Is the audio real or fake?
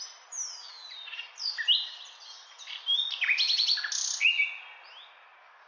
real